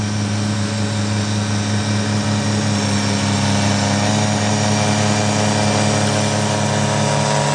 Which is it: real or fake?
real